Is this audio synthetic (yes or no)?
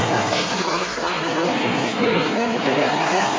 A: yes